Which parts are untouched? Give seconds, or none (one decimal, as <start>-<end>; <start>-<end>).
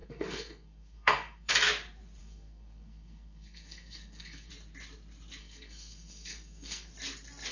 1.5-2.2; 4.5-5.4; 6.9-7.5